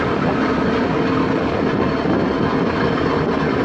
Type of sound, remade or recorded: recorded